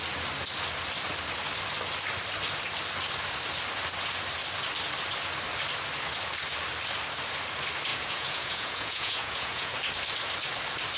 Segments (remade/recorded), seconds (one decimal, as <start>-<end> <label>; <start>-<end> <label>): 0.0-7.9 recorded; 7.9-9.7 remade; 9.7-11.0 recorded